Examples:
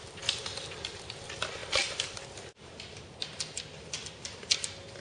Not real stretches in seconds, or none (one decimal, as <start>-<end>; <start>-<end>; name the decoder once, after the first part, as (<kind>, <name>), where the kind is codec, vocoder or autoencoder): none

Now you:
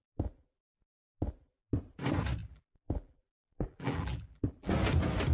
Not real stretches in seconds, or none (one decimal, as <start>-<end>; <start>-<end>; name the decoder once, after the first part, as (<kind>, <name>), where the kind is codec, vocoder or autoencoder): 2.4-4.7 (vocoder, BigVGAN v2)

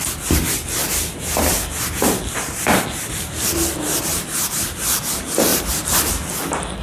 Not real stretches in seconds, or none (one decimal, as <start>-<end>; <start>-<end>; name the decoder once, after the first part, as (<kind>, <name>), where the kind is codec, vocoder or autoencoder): 4.1-5.0 (vocoder, BigVGAN v2); 5.5-6.1

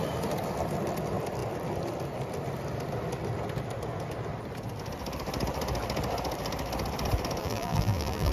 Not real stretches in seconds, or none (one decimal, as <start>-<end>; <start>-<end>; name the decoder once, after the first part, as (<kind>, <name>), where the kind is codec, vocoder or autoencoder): 7.4-8.3 (vocoder, BigVGAN v2)